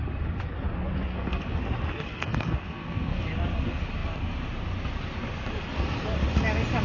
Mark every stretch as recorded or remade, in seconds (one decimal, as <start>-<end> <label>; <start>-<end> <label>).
0.0-1.1 recorded; 1.1-1.6 remade; 1.6-2.1 recorded; 2.1-3.2 remade; 3.2-6.8 recorded